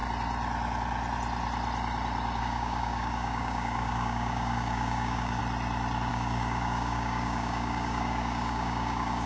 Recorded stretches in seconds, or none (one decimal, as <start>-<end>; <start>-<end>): 0.0-2.4; 5.4-6.1